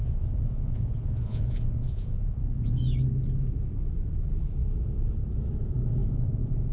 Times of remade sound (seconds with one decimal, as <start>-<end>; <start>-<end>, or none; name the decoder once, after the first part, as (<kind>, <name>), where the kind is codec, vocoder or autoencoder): 0.0-2.8 (vocoder, Vocos); 5.6-6.7